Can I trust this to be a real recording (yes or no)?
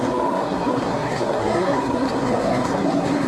no